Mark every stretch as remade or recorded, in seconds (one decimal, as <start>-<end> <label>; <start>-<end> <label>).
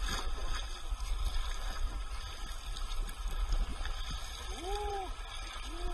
0.0-5.9 recorded